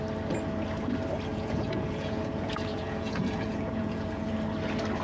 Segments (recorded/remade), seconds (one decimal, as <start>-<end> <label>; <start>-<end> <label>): 0.0-1.3 recorded; 1.3-4.3 remade; 4.3-5.0 recorded